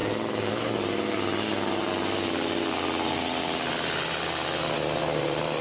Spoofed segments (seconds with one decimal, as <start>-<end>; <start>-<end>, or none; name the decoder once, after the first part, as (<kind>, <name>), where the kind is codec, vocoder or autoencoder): none